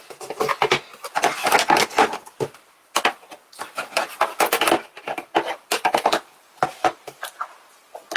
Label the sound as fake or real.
real